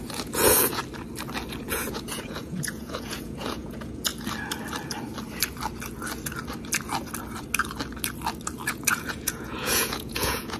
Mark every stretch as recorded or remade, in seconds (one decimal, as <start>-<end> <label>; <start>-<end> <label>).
0.0-0.8 remade; 0.8-1.6 recorded; 1.6-4.1 remade; 4.1-8.7 recorded; 8.7-10.6 remade